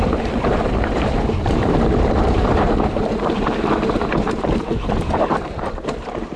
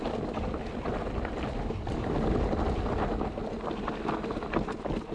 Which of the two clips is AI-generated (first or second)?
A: first